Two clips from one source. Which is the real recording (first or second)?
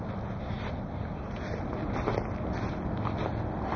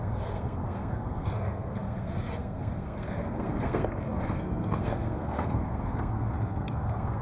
first